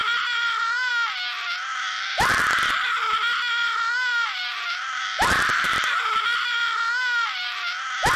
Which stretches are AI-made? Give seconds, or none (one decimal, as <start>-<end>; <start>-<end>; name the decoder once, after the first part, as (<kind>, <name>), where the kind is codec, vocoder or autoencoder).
0.0-0.9 (vocoder, BigVGAN v2); 1.7-2.7; 3.6-7.6